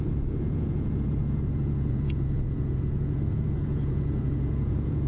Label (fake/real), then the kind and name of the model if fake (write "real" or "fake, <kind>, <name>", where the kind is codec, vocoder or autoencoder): fake, vocoder, Vocos